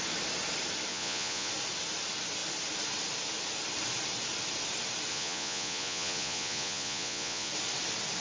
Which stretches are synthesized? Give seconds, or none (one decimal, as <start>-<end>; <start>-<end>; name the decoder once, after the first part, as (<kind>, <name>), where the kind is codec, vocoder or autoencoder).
0.9-1.5 (vocoder, Vocos); 5.1-7.5